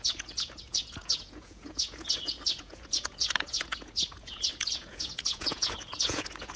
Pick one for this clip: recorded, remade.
remade